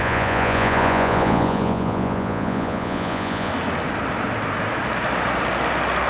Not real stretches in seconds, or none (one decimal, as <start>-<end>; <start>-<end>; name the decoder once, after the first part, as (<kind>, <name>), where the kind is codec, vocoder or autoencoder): 0.0-3.5 (vocoder, Vocos)